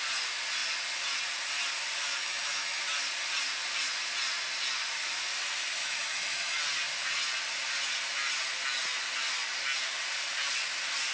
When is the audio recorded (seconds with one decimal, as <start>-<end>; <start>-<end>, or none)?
0.0-2.2; 2.8-5.8; 6.6-11.1